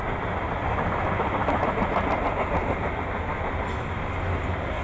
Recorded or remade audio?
recorded